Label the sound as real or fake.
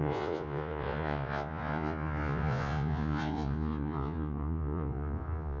fake